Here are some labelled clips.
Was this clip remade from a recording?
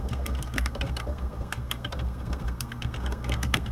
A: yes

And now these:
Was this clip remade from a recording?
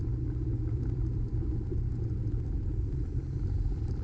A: yes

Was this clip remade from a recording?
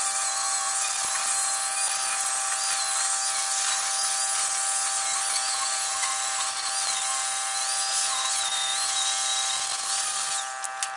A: no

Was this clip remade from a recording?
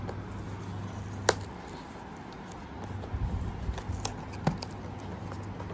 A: no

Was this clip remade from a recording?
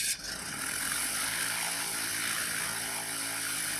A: no